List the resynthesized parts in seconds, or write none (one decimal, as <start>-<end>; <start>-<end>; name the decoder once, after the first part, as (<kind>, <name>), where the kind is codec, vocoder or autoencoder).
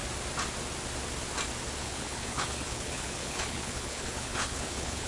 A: 1.8-5.1 (codec, HILCodec)